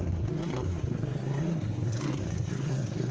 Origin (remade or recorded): remade